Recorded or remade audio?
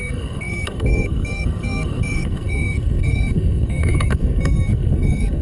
remade